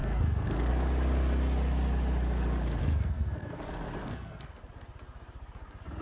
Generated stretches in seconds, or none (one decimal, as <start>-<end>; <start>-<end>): 0.0-0.7; 2.8-3.6; 4.0-4.6